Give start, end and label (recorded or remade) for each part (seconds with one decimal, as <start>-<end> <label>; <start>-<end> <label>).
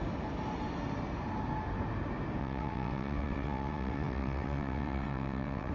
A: 0.0-2.4 recorded; 2.4-5.7 remade